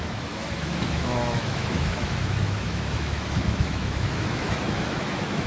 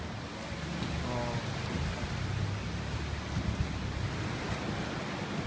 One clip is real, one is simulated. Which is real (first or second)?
second